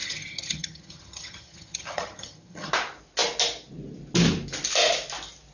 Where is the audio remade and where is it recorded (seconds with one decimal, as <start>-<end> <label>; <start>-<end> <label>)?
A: 0.0-2.7 remade; 2.7-5.5 recorded